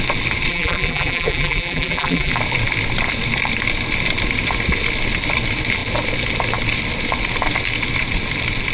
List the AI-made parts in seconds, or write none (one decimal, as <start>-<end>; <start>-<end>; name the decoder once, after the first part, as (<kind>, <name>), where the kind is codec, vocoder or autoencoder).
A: 0.5-2.3 (vocoder, BigVGAN v2)